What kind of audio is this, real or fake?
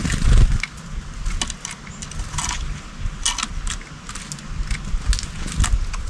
real